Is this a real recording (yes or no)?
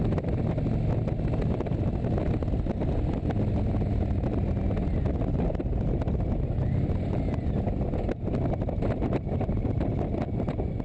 yes